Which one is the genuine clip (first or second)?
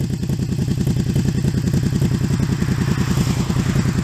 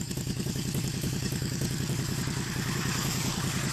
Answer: first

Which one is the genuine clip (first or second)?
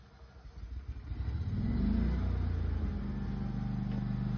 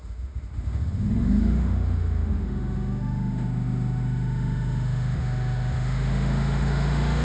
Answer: first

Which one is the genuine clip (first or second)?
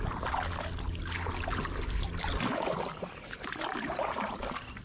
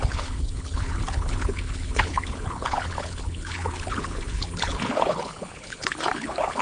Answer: first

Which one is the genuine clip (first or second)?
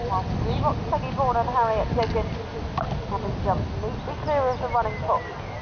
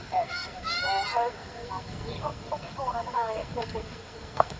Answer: first